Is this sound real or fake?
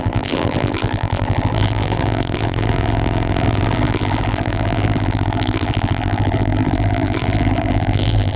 fake